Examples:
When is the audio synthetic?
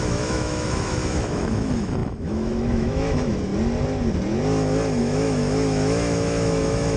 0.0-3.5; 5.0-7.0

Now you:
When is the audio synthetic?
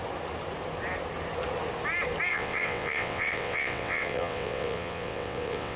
2.3-5.8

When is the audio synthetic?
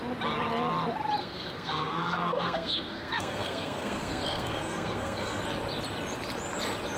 1.2-5.4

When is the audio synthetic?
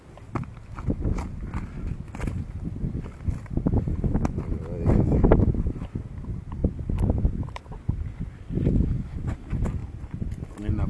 9.8-10.5